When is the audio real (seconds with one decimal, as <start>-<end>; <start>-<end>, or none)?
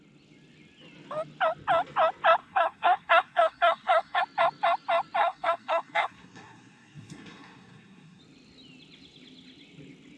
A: 0.0-2.4; 4.2-5.2; 8.2-10.2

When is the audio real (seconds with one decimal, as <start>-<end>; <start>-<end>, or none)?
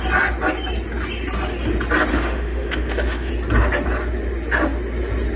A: 0.0-2.1; 3.3-5.4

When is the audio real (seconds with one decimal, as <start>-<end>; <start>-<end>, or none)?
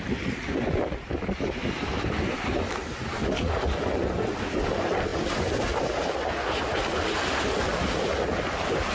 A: 0.0-1.6; 3.1-8.9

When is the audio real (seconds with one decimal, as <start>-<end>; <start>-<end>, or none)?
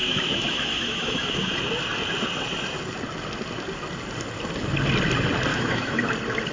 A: 1.5-5.5; 6.1-6.5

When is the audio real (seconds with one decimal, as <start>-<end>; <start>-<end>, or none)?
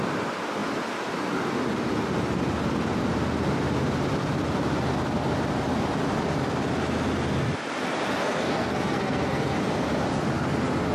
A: 0.0-8.2; 9.6-10.9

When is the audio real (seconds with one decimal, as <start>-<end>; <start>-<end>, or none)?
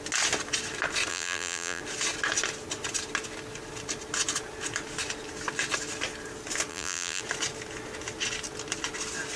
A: 0.0-1.1; 1.8-6.7; 7.2-9.4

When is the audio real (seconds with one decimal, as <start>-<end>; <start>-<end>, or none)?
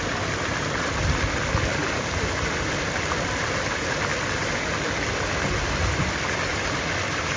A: 0.0-7.4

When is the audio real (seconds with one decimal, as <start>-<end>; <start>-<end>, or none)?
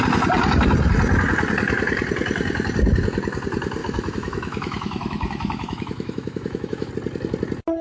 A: 0.0-3.8; 6.9-7.8